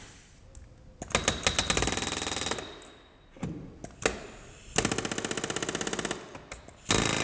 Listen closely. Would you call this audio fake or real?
real